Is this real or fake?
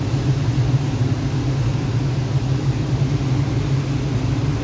real